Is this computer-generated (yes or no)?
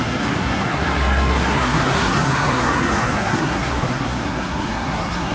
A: yes